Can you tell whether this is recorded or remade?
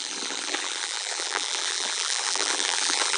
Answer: remade